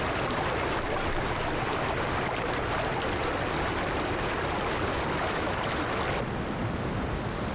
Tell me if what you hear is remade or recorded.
recorded